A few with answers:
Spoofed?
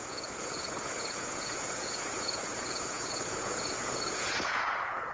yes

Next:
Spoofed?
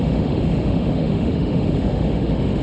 yes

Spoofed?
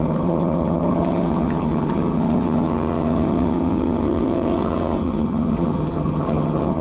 yes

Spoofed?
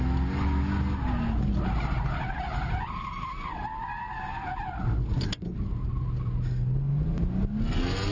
no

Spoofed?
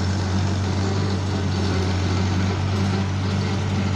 no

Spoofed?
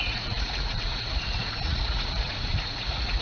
yes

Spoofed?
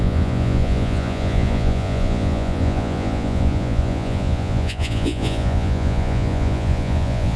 yes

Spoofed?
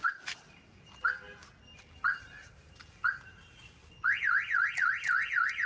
no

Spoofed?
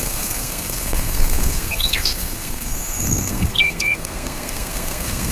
yes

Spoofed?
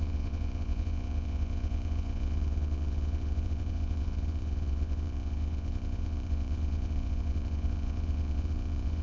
yes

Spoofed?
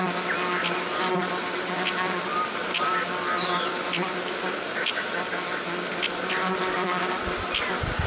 no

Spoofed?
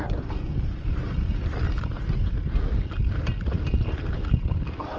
yes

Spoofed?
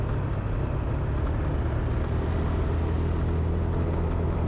no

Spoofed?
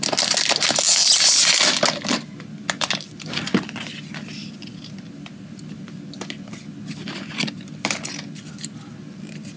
no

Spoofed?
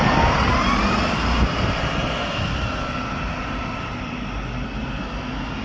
no